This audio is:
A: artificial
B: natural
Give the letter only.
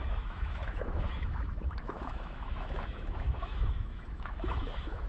A